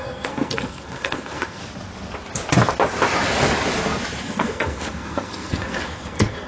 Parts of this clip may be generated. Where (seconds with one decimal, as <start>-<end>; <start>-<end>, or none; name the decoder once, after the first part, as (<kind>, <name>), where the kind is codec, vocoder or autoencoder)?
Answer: 0.0-1.6 (codec, SNAC); 4.2-6.5